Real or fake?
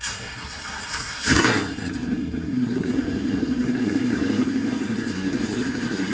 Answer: fake